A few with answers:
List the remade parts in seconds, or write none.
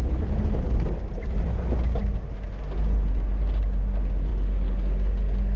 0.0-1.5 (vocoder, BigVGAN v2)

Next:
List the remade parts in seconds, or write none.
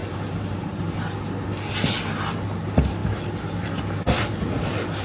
0.0-1.0 (vocoder, BigVGAN v2)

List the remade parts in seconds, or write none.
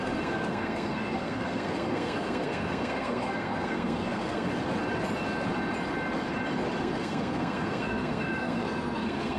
0.0-4.5 (codec, SNAC); 6.8-9.4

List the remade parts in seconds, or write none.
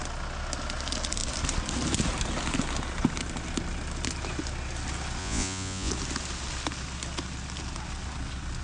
5.2-5.9 (vocoder, Vocos)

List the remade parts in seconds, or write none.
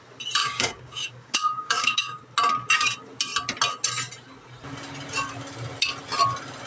0.4-2.2 (codec, DAC)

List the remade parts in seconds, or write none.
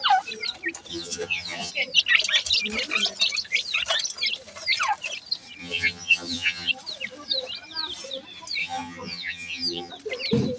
0.9-1.7 (vocoder, HiFi-GAN); 5.6-6.7; 8.6-9.9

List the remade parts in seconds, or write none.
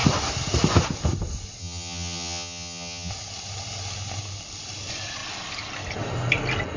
1.6-3.1 (vocoder, HiFi-GAN)